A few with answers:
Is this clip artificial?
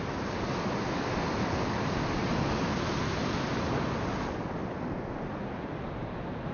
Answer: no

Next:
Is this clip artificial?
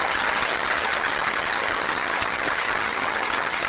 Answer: yes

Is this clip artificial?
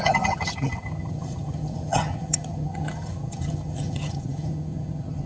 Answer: yes